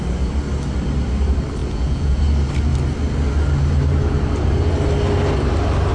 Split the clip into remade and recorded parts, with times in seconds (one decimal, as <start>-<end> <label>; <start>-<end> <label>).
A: 0.0-1.6 recorded; 1.6-2.2 remade; 2.2-5.9 recorded